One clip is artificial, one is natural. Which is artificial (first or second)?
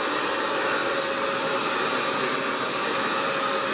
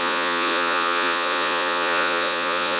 second